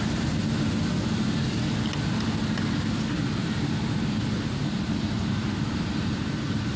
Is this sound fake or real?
real